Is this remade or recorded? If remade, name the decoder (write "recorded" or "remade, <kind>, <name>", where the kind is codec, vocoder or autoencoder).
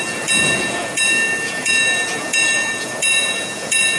remade, vocoder, Vocos